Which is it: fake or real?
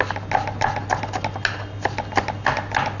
real